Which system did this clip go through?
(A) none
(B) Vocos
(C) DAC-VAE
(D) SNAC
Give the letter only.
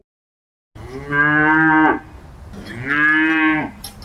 A